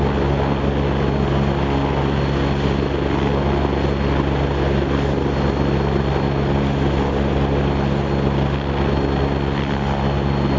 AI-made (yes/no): no